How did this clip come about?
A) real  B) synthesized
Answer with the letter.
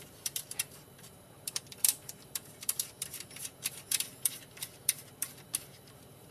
B